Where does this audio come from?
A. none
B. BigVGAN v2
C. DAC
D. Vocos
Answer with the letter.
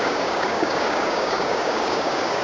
C